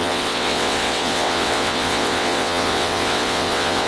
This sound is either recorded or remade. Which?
remade